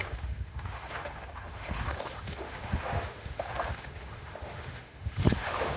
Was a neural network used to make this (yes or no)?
yes